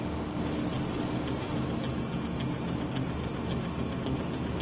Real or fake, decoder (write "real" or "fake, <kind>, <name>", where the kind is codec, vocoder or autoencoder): real